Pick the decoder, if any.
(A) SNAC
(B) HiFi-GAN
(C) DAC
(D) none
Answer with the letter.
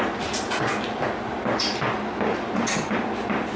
D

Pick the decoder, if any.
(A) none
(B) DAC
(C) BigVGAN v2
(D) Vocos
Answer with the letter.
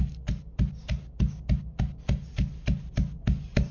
A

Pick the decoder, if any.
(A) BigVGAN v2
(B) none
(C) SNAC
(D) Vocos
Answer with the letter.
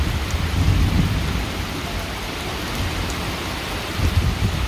A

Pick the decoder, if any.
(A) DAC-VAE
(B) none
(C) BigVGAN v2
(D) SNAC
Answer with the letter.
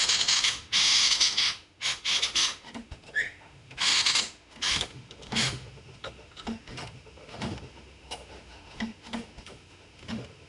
A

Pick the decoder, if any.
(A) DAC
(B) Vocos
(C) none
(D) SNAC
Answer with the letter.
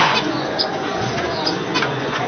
B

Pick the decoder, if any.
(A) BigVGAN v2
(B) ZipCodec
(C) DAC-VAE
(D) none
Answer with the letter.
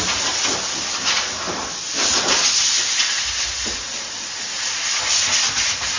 D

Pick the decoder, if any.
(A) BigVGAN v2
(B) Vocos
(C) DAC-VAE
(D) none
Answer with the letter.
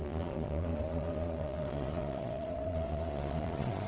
B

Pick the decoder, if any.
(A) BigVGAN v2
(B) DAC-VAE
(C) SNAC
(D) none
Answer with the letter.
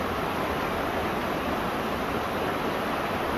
A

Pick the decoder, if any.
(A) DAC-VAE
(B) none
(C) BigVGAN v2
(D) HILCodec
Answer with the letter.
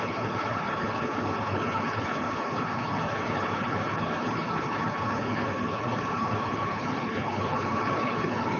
D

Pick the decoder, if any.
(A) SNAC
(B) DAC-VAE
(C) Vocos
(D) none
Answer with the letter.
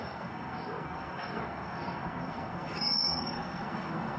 A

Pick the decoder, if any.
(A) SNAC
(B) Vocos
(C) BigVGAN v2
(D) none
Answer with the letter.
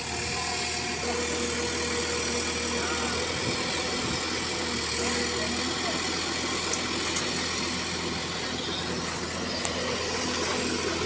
D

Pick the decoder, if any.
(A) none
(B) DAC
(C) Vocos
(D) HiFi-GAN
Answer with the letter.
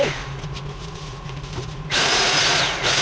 C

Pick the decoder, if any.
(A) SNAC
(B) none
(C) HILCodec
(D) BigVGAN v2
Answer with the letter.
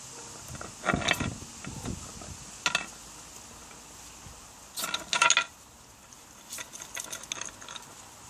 B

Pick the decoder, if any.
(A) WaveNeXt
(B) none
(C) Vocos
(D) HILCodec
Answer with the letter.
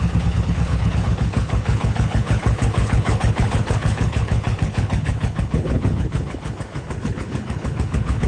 D